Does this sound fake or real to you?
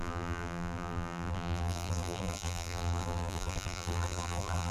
fake